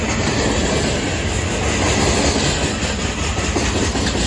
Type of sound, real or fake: real